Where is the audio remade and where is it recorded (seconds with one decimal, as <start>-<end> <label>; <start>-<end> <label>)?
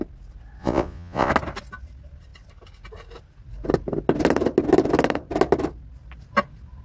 0.0-0.6 recorded; 0.6-1.3 remade; 1.3-6.8 recorded